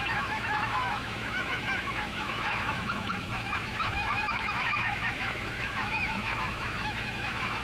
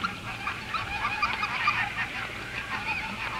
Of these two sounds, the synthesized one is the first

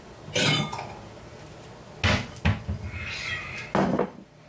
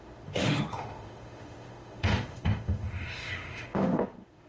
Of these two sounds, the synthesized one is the second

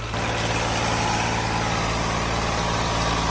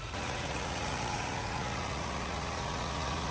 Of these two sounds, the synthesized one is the second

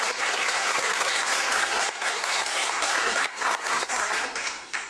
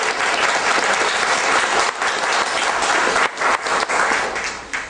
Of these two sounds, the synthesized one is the first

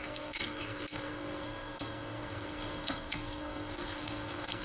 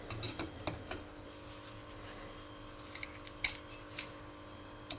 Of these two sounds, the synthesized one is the first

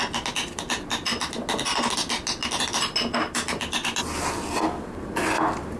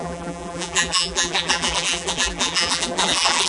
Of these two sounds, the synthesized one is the second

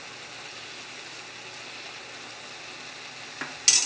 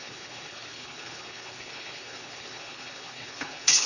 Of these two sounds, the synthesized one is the second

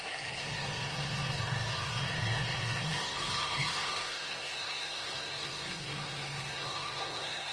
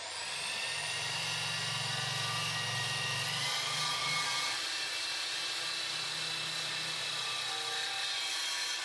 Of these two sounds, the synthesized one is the first